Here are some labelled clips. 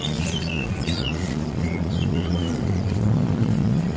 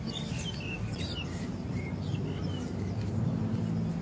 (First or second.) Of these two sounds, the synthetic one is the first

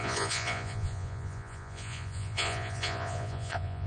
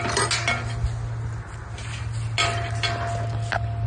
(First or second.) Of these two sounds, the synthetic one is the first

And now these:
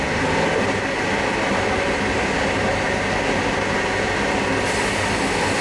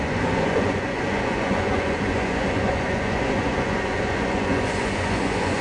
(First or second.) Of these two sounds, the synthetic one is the second